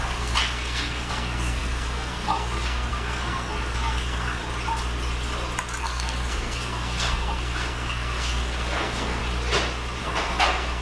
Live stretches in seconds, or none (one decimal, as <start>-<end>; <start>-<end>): 4.4-5.8; 9.2-10.0